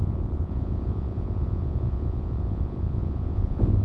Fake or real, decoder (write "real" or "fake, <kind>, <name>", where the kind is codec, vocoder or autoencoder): fake, vocoder, Vocos